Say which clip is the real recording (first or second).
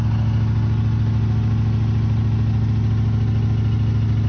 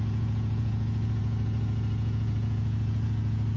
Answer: first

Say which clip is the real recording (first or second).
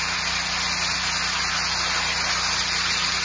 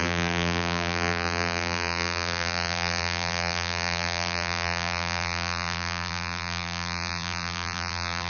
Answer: first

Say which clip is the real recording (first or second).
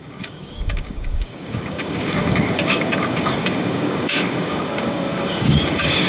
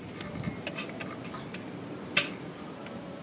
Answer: second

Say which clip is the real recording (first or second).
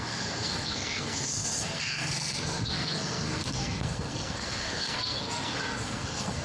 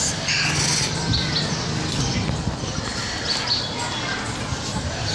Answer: second